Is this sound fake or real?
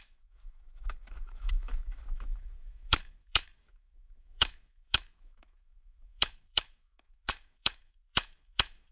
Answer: fake